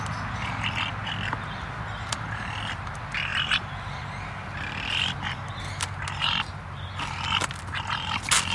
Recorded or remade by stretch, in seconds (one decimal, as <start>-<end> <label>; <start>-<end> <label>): 0.0-8.5 recorded